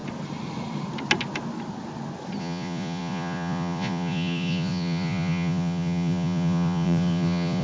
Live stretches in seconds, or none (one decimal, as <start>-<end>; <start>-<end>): 0.0-2.4